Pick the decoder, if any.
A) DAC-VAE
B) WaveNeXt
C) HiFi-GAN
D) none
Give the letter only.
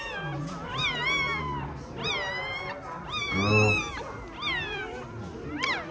D